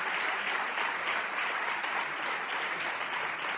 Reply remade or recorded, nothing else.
recorded